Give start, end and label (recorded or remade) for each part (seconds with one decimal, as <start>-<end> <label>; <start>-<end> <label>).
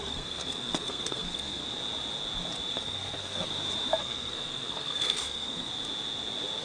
0.0-1.6 remade; 1.6-2.7 recorded; 2.7-3.5 remade; 3.5-4.0 recorded; 4.0-5.7 remade; 5.7-6.6 recorded